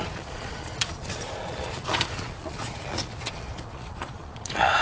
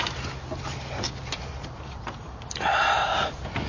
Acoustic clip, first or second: second